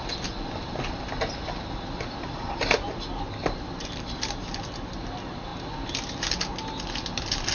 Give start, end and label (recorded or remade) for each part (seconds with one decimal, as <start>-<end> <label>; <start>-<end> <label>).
0.0-7.5 recorded